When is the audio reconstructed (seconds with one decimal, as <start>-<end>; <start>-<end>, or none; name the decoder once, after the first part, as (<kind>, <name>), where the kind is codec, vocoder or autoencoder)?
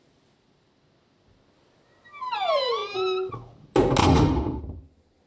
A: 4.0-4.6 (autoencoder, DAC-VAE)